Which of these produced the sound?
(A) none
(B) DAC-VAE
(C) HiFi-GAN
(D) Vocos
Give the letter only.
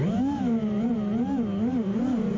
A